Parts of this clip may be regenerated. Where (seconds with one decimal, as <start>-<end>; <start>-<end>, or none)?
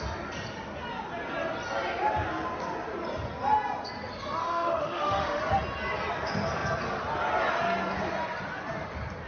4.4-5.4